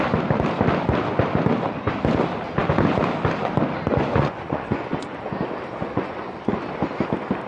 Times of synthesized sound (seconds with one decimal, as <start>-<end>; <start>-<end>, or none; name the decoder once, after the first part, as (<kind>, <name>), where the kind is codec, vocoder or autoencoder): 3.9-5.2 (vocoder, Vocos); 5.8-6.5